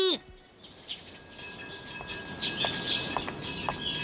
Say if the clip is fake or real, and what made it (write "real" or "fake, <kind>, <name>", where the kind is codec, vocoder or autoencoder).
real